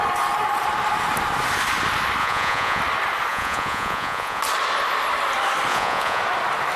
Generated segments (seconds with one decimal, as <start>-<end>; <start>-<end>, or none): 2.2-2.8; 3.3-4.4; 5.7-6.2